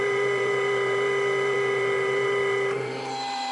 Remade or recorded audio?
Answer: remade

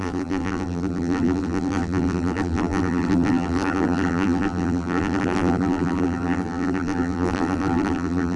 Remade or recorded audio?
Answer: remade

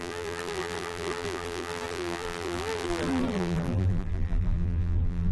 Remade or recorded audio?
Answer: remade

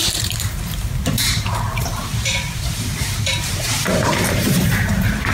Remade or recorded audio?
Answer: remade